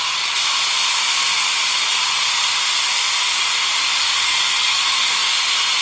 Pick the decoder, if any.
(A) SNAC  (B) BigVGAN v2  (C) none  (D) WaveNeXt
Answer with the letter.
C